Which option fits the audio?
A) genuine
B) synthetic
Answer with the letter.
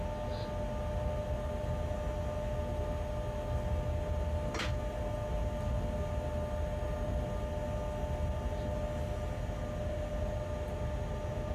A